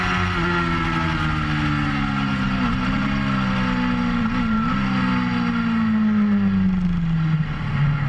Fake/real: real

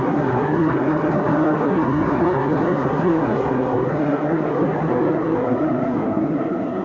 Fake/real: fake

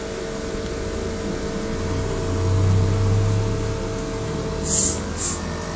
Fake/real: real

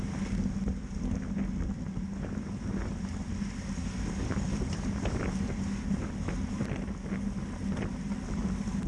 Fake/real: real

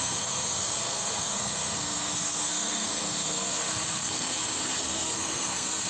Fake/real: fake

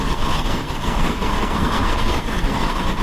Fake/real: fake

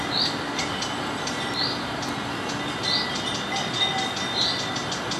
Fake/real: real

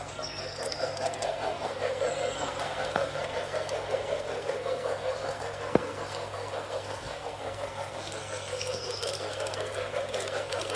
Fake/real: fake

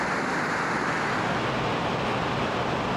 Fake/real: real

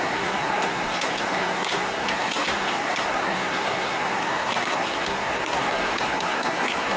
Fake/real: fake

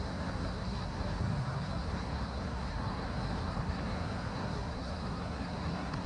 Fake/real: fake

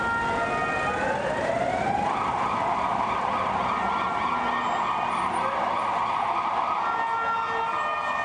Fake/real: real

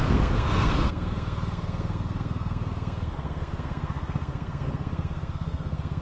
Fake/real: fake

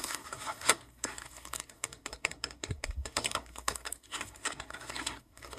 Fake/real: fake